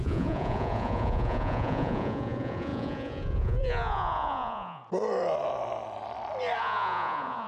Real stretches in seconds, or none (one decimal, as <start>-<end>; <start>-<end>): 4.8-6.6